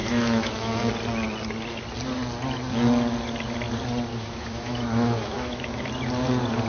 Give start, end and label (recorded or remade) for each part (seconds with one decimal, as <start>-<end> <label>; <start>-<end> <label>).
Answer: 0.0-0.9 remade; 0.9-4.1 recorded; 4.1-5.9 remade; 5.9-6.7 recorded